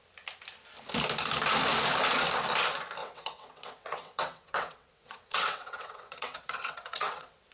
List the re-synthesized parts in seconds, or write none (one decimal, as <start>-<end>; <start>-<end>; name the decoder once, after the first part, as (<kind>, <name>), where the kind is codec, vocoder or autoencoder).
3.0-7.5 (vocoder, WaveNeXt)